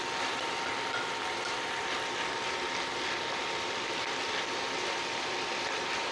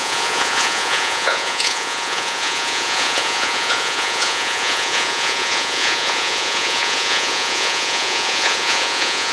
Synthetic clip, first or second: second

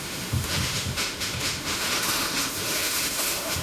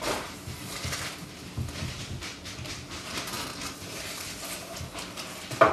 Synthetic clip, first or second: first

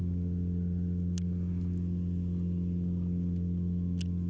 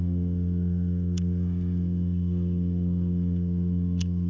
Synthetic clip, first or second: second